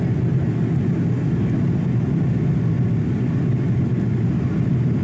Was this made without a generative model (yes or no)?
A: yes